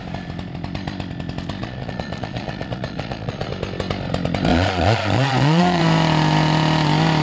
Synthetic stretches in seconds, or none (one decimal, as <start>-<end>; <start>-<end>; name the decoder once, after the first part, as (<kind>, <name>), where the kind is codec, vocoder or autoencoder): 1.6-3.5 (vocoder, Vocos); 4.5-5.8